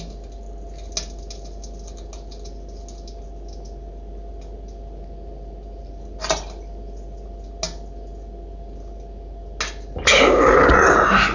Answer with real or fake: real